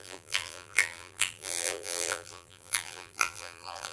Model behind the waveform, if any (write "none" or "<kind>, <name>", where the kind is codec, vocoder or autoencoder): vocoder, BigVGAN v2